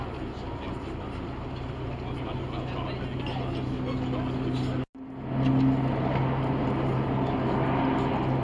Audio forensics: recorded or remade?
recorded